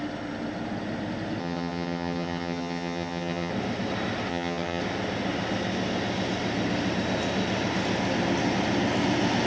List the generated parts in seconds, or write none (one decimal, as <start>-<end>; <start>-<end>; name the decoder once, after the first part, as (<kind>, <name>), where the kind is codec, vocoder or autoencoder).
1.4-3.5 (vocoder, HiFi-GAN); 4.3-4.8